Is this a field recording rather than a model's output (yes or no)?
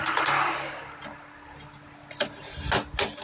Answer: yes